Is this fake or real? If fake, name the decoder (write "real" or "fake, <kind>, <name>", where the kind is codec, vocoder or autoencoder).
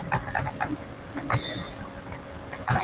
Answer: real